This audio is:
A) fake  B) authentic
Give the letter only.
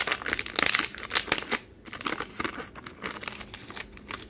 B